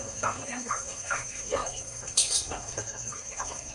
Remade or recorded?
remade